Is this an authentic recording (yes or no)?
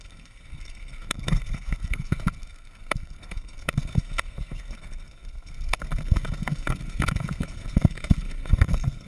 no